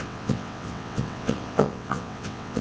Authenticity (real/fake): fake